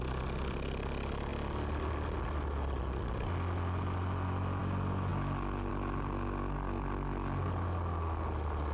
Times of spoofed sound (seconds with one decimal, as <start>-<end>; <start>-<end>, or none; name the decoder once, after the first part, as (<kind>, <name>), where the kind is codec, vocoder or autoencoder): none